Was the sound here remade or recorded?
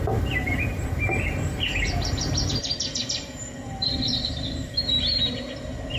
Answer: remade